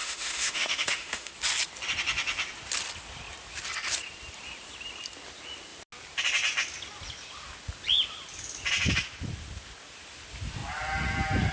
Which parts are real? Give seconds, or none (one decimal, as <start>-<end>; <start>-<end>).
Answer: 1.3-11.5